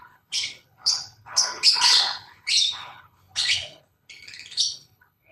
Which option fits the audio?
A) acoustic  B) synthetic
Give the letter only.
B